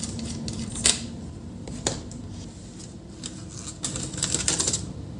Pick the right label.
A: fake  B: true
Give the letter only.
B